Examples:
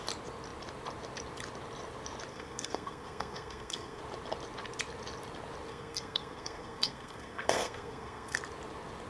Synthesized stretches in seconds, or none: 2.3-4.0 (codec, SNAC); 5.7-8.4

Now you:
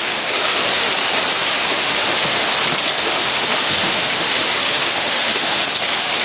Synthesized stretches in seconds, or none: 0.0-0.9 (autoencoder, DAC-VAE); 1.5-2.4; 3.0-6.2

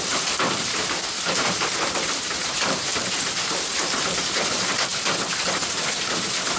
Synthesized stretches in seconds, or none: 0.0-2.9 (vocoder, BigVGAN v2); 3.5-4.9; 5.6-6.6

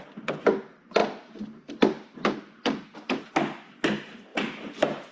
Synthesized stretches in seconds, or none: 1.0-3.1 (vocoder, BigVGAN v2)

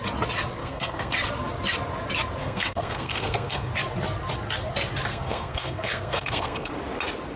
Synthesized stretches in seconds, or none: 0.6-1.1 (codec, SNAC); 2.4-3.7; 5.1-6.7

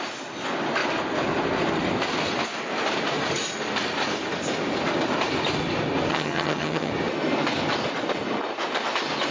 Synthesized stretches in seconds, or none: 6.1-6.9 (vocoder, HiFi-GAN)

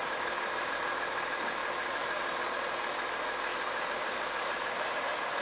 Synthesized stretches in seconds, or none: 0.0-0.7 (vocoder, BigVGAN v2); 1.6-2.5; 3.5-5.0

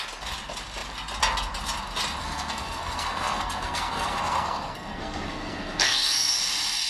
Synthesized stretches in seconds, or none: 2.2-6.3 (codec, SNAC)